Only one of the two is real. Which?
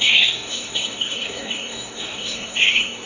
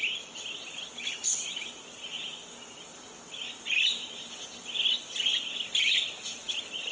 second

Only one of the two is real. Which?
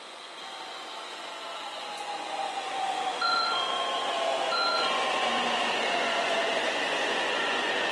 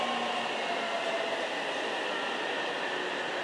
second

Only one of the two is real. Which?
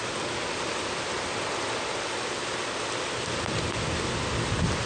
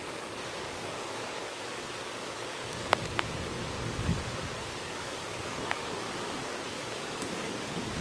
first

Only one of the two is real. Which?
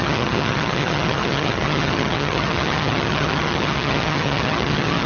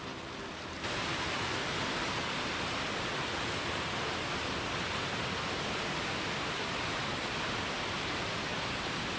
second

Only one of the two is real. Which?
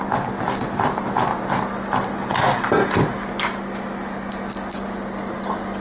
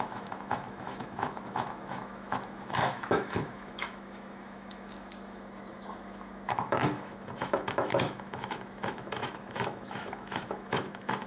first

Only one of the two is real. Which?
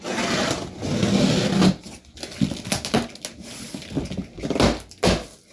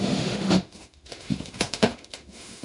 first